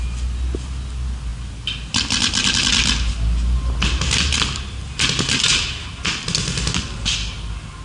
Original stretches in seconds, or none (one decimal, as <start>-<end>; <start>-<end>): 0.0-7.8